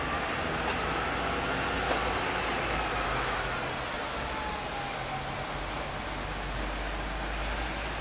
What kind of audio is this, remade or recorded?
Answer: recorded